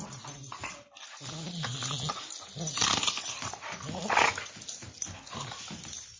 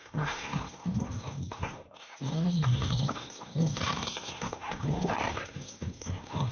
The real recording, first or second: first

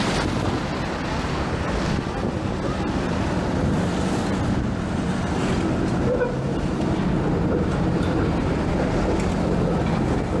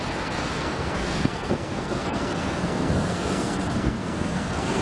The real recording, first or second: first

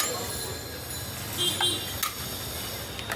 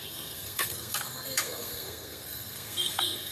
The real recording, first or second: first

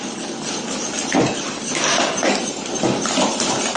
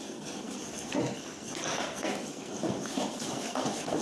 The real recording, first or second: first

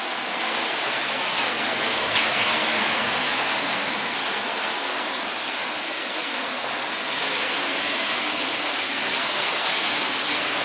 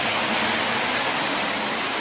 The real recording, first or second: second